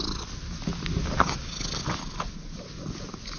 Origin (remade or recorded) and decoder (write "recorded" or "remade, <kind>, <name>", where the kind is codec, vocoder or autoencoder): recorded